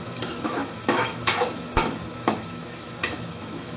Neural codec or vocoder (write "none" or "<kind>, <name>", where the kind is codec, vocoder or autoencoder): autoencoder, DAC-VAE